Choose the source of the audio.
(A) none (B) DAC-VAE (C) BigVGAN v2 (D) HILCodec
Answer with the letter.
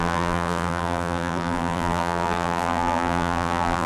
C